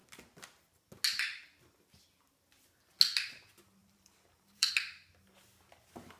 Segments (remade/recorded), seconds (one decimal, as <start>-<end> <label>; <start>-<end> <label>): 0.0-3.8 recorded; 3.8-4.7 remade; 4.7-6.2 recorded